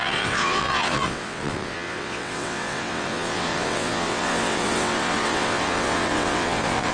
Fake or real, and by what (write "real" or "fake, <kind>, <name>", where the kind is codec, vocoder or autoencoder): fake, vocoder, WaveNeXt